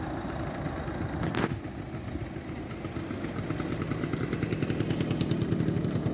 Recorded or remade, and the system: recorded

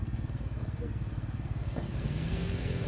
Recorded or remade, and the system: remade, codec, SNAC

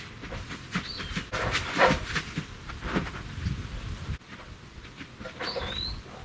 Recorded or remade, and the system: recorded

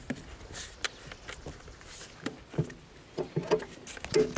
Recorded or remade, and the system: recorded